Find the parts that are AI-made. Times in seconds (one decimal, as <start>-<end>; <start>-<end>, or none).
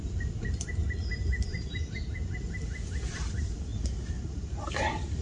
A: none